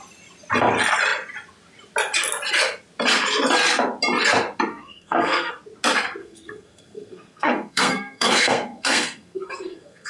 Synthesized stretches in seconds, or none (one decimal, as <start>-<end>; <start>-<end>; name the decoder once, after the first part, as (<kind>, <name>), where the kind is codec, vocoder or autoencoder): 4.7-5.5 (codec, SNAC); 6.2-10.1